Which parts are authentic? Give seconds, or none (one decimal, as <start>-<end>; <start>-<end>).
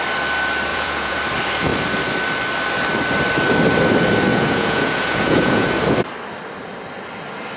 0.0-0.7; 1.2-4.3; 5.7-7.6